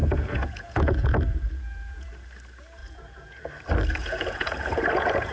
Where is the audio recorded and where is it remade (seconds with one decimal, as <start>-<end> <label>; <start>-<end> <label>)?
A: 0.0-2.1 remade; 2.1-2.8 recorded; 2.8-3.5 remade; 3.5-4.0 recorded; 4.0-5.3 remade